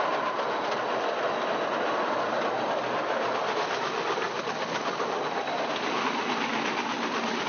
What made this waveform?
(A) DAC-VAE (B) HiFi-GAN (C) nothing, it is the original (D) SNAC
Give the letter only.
C